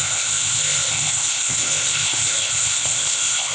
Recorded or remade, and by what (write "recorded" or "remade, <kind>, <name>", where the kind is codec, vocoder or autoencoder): remade, codec, ZipCodec